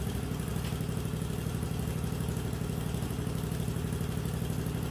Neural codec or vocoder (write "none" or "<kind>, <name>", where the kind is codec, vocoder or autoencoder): none